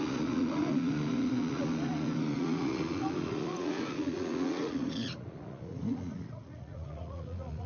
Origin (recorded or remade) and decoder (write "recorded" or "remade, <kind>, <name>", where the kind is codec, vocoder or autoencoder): remade, vocoder, Vocos